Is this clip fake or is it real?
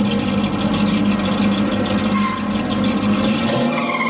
real